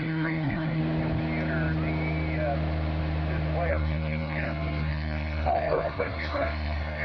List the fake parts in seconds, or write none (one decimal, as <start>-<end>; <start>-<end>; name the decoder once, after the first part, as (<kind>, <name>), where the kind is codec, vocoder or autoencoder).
0.0-0.8 (codec, SNAC); 3.7-7.0